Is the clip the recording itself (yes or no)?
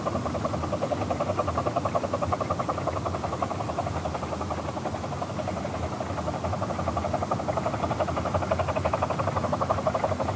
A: yes